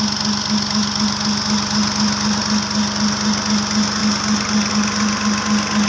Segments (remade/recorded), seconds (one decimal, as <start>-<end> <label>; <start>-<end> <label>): 0.0-5.9 recorded